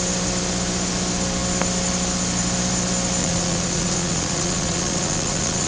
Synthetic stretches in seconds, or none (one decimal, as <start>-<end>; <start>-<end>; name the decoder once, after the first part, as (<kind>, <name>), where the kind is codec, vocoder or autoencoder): 3.2-5.7 (vocoder, Vocos)

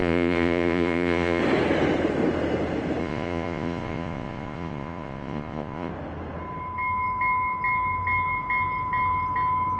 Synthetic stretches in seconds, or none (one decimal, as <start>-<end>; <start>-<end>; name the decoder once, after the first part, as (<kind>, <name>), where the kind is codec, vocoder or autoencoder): 0.0-1.4 (vocoder, Vocos); 3.0-5.9

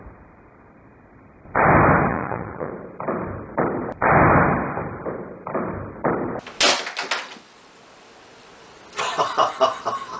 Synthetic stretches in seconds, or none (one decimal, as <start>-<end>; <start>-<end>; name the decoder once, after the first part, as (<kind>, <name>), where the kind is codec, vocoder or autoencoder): 2.1-2.7 (vocoder, Vocos)

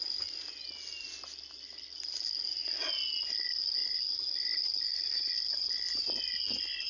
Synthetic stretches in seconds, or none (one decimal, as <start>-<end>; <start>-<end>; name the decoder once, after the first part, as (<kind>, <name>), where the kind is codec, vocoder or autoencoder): none

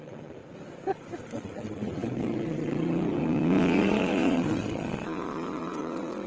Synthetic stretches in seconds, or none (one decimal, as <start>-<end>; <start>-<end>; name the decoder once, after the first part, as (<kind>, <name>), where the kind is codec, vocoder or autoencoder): 0.0-0.4 (vocoder, Vocos); 1.3-6.3